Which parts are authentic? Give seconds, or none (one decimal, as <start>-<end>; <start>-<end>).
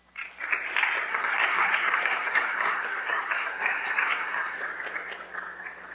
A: 0.0-1.1; 4.6-5.9